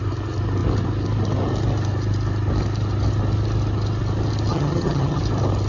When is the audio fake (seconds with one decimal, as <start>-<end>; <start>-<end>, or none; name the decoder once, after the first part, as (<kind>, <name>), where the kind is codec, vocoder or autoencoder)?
4.5-5.2 (vocoder, HiFi-GAN)